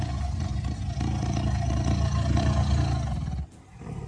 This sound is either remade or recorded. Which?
recorded